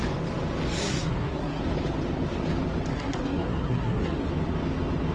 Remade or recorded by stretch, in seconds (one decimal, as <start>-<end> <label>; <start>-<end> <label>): 0.0-0.8 recorded; 0.8-1.6 remade; 1.6-2.9 recorded; 2.9-4.3 remade; 4.3-5.1 recorded